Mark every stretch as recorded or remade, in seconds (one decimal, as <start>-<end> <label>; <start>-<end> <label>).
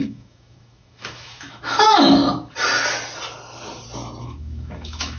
0.0-2.2 remade; 2.2-4.2 recorded; 4.2-5.2 remade